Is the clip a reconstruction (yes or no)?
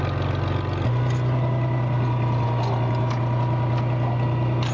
no